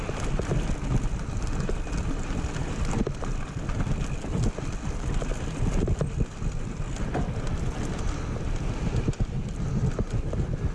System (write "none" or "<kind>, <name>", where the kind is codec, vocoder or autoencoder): none